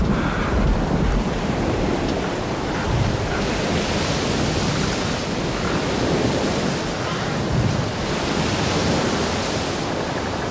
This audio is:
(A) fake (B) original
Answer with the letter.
A